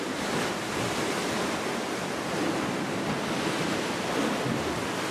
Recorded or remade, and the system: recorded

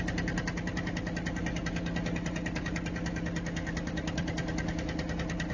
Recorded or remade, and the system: recorded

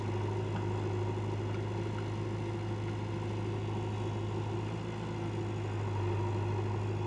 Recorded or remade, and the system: recorded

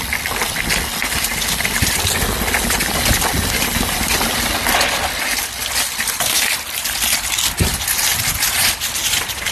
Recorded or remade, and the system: recorded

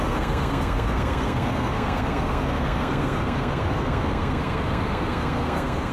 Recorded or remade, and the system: remade, codec, SNAC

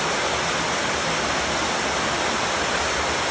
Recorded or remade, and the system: recorded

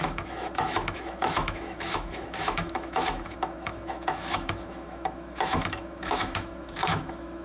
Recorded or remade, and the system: remade, autoencoder, DAC-VAE